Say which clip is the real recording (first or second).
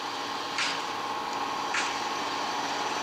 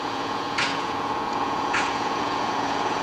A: first